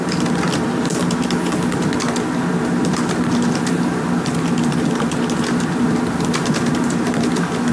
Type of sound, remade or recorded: recorded